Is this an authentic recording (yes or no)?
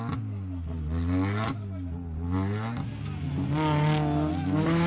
yes